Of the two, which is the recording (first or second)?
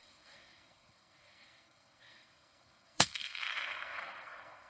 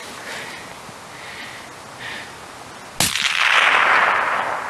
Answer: second